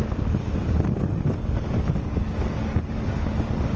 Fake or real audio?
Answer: fake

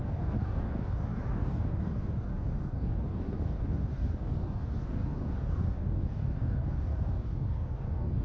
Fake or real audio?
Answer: fake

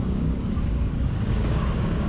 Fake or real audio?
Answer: fake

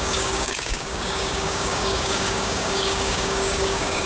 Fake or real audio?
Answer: fake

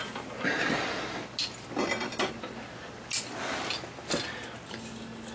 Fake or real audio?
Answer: real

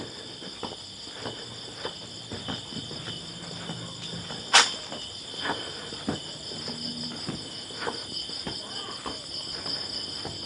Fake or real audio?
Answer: real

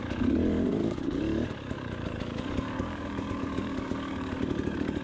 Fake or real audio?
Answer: fake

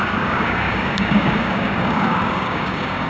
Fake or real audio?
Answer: fake